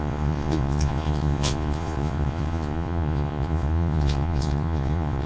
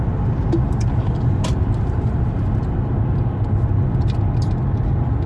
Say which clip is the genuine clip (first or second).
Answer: second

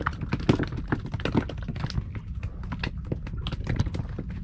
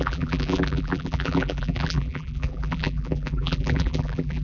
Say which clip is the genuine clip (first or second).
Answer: first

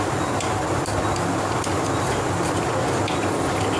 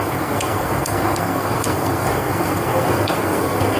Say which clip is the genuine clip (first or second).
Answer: first